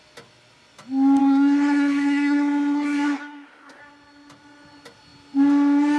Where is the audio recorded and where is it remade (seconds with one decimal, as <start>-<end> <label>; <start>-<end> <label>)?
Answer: 0.0-1.2 recorded; 1.2-3.8 remade; 3.8-6.0 recorded